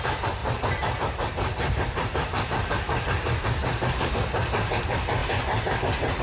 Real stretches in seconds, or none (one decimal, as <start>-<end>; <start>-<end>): 0.0-0.4; 4.1-6.2